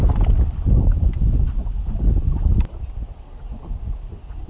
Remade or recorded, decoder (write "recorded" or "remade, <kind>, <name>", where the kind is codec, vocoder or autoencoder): recorded